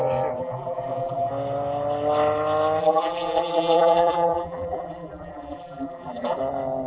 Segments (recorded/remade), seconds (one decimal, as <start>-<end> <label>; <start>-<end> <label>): 0.0-0.4 recorded; 0.4-1.3 remade; 1.3-2.8 recorded; 2.8-6.4 remade; 6.4-6.9 recorded